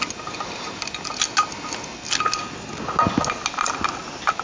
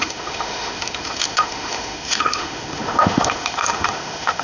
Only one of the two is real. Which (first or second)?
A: first